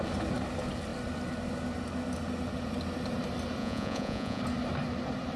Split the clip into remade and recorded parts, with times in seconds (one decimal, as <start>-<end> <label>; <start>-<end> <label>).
0.0-3.6 recorded; 3.6-4.4 remade; 4.4-5.4 recorded